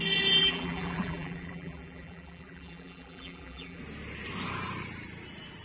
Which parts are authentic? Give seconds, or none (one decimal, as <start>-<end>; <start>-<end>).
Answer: 0.0-0.4; 3.8-5.6